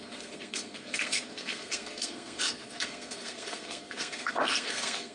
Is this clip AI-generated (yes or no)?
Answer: yes